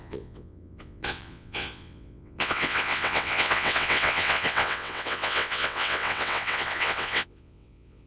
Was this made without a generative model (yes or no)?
no